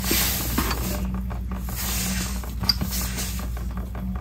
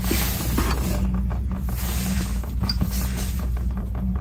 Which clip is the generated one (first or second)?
second